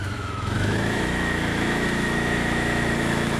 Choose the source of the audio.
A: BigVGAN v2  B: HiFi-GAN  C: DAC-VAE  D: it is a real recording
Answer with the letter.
C